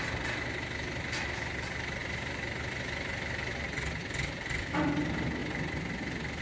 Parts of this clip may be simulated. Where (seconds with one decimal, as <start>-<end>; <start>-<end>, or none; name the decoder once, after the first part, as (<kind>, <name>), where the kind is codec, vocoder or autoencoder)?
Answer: 2.0-2.7 (vocoder, BigVGAN v2); 4.0-4.6; 5.4-6.4